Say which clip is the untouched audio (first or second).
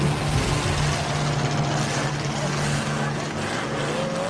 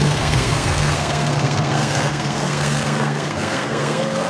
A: first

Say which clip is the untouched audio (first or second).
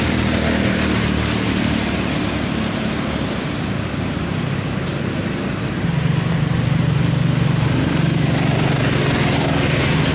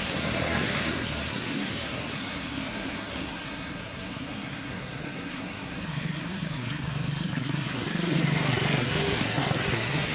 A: first